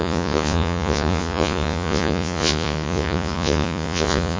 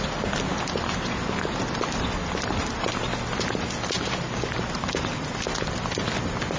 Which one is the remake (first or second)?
first